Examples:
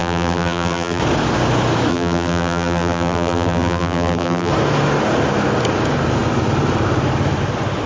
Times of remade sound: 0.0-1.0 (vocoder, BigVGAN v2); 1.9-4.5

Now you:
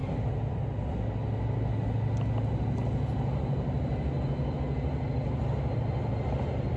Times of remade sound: none

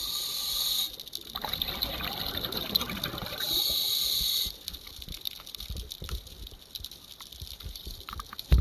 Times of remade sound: none

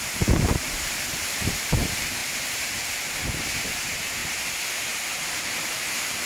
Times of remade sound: 0.0-4.2 (vocoder, BigVGAN v2); 4.8-6.3

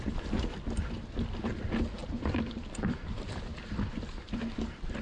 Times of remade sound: 2.0-3.7 (vocoder, BigVGAN v2)

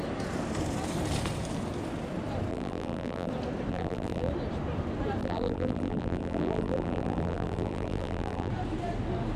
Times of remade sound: 2.5-3.3 (vocoder, BigVGAN v2); 3.7-4.3; 5.2-8.5

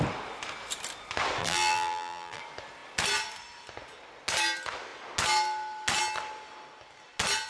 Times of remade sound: 1.4-2.4 (vocoder, BigVGAN v2)

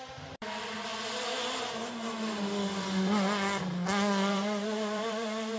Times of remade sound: 0.0-0.9 (vocoder, BigVGAN v2); 4.3-5.6